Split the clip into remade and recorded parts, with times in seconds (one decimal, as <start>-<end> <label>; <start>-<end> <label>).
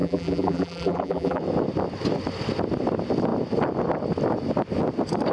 0.0-1.4 remade; 1.4-5.3 recorded